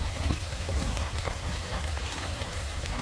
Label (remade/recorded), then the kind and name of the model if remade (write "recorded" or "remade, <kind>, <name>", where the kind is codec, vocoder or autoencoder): remade, codec, SNAC